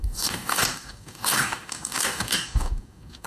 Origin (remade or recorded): remade